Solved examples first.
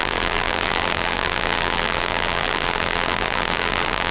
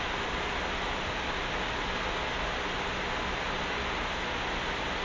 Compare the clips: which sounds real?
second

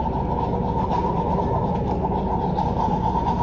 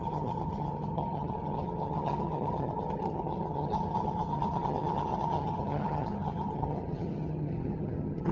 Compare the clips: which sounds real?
first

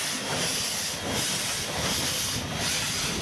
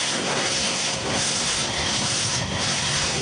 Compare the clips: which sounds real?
first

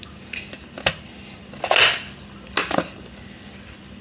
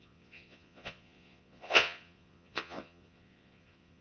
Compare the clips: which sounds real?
first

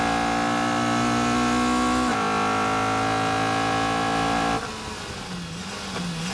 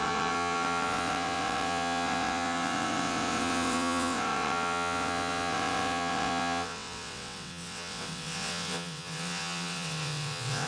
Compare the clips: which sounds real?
first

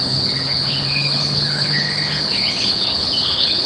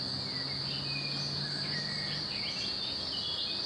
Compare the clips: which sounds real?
second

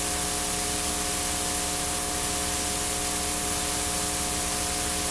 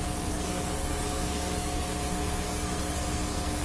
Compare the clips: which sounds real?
first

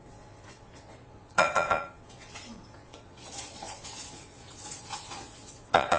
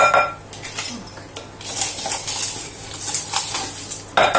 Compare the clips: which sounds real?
second